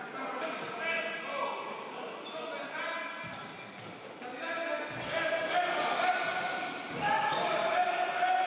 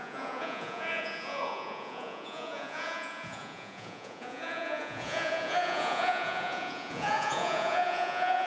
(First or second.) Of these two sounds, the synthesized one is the second